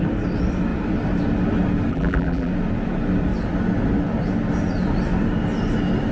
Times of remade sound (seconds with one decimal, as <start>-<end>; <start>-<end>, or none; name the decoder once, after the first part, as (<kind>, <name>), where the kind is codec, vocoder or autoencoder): 1.9-2.5 (vocoder, BigVGAN v2)